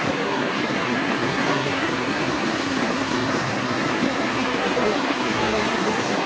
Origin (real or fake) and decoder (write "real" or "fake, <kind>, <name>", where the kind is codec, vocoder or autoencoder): fake, codec, SNAC